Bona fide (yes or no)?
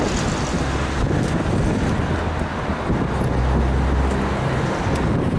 yes